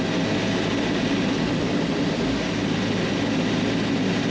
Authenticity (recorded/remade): recorded